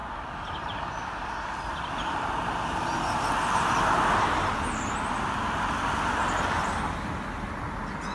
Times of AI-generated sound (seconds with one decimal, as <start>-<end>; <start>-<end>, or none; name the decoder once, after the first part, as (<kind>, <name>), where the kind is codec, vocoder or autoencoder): none